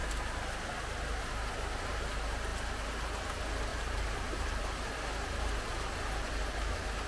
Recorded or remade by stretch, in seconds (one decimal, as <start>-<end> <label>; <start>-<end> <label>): 0.0-3.7 recorded; 3.7-4.6 remade; 4.6-7.1 recorded